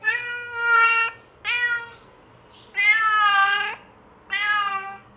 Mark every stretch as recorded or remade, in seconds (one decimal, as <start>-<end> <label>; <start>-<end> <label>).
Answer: 0.0-1.0 remade; 1.0-1.8 recorded; 1.8-2.3 remade; 2.3-4.7 recorded; 4.7-5.2 remade